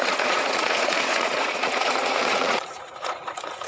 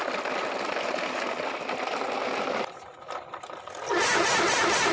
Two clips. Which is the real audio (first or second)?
second